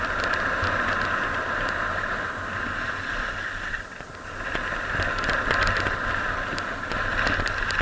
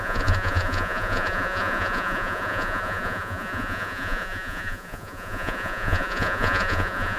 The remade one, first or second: second